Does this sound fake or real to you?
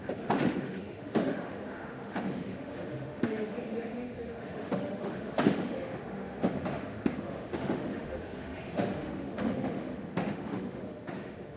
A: fake